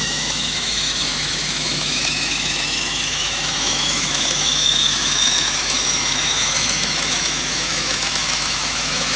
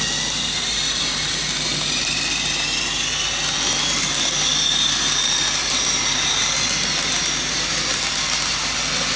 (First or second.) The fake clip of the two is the first